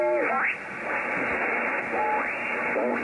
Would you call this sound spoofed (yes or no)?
no